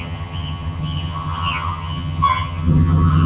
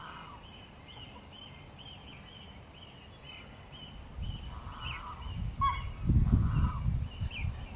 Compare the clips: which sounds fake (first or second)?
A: first